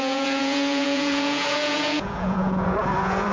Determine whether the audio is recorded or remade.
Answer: remade